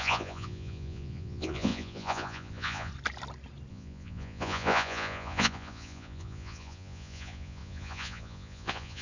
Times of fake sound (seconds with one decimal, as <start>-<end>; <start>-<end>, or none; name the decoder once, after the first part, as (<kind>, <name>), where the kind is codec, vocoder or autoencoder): 0.0-2.9 (vocoder, Vocos); 3.7-9.0